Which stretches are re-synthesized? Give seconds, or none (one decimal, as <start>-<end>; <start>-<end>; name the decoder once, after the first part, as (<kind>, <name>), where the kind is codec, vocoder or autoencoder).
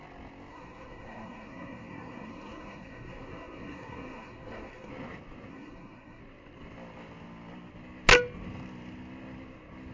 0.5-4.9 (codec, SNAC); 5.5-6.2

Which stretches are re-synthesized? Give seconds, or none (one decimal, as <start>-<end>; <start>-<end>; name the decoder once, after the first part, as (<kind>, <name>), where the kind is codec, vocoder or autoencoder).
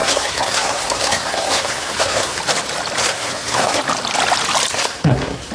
0.0-2.4 (codec, SNAC); 3.0-3.8; 4.7-5.5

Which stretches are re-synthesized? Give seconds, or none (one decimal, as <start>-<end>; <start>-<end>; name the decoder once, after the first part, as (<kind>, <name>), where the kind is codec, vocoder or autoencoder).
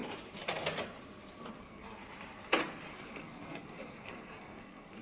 1.6-2.0 (codec, SNAC); 2.9-5.0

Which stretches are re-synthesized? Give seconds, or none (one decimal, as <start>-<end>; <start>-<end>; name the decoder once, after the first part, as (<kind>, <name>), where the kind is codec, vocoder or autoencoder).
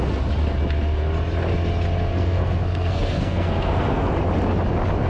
2.1-4.1 (codec, SNAC)